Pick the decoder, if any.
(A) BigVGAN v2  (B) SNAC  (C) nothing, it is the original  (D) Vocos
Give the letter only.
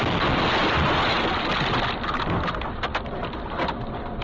C